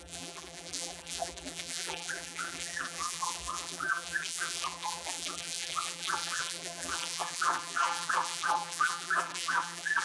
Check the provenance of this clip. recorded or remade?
remade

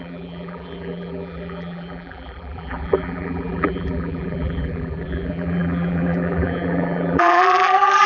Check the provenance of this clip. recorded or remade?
remade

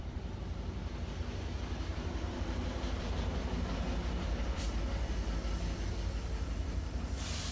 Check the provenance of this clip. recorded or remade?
remade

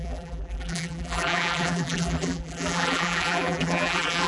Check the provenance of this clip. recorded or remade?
remade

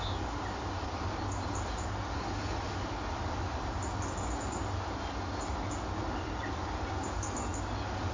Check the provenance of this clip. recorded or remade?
recorded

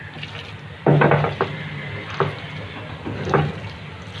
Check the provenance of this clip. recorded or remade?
recorded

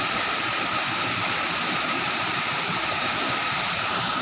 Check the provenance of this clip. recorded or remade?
remade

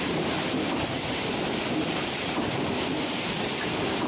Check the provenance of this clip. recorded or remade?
remade